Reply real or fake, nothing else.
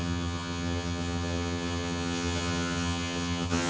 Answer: fake